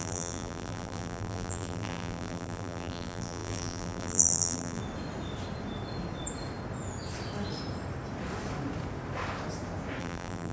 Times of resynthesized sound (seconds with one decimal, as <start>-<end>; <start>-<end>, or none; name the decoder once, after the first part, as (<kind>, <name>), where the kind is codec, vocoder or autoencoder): 0.0-4.8 (vocoder, BigVGAN v2); 10.0-10.5

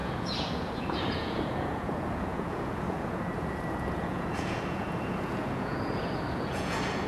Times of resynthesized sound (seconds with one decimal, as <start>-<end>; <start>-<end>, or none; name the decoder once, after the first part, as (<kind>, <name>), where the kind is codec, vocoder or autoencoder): 0.0-7.1 (vocoder, Vocos)